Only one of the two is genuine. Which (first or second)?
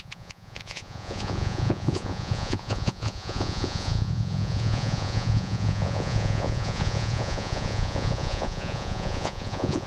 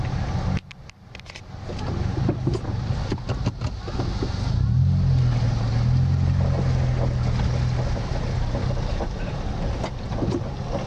second